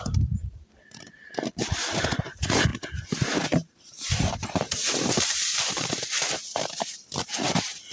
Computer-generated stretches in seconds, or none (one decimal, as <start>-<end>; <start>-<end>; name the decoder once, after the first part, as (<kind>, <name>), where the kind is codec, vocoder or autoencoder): 0.0-2.7 (vocoder, BigVGAN v2); 3.5-7.9